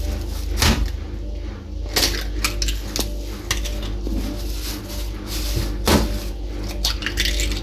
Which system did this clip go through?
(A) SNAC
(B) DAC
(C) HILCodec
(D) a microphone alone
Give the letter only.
D